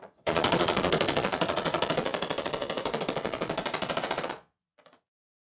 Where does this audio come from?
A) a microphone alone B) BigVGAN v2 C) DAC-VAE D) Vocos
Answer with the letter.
D